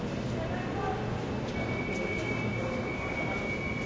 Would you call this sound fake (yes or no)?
no